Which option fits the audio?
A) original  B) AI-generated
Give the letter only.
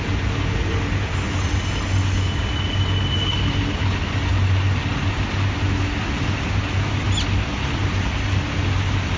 A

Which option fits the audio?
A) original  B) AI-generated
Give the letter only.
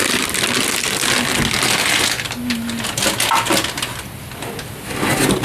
A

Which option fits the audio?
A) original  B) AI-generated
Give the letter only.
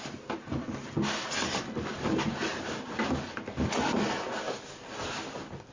B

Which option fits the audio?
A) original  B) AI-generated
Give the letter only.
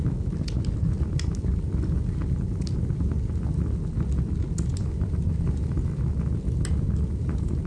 A